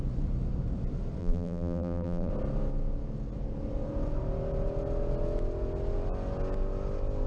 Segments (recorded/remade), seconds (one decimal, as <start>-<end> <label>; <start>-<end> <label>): 0.0-1.2 recorded; 1.2-2.3 remade; 2.3-7.3 recorded